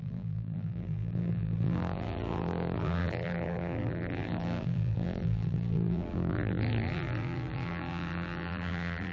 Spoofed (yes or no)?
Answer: yes